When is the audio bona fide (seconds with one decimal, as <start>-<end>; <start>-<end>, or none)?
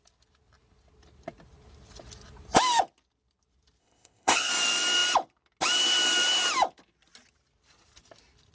0.0-3.8; 4.5-8.5